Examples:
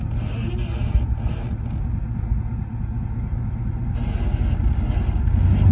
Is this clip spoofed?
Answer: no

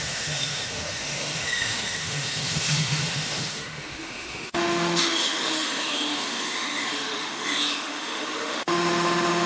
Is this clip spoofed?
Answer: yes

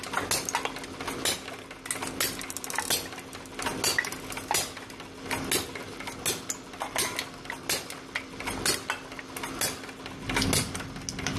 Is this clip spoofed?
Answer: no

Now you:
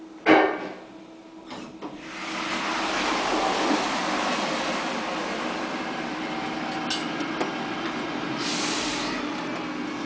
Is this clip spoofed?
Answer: no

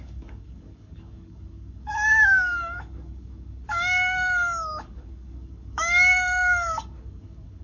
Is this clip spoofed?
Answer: yes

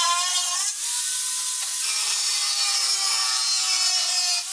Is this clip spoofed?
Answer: no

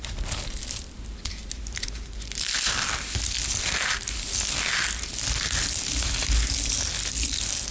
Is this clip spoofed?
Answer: no